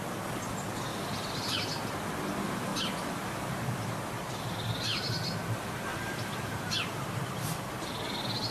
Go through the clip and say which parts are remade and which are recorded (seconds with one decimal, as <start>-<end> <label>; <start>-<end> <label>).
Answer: 0.0-0.9 recorded; 0.9-1.8 remade; 1.8-5.9 recorded; 5.9-7.9 remade; 7.9-8.5 recorded